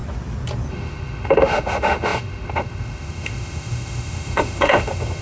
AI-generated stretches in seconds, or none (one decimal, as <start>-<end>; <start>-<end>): 0.7-5.2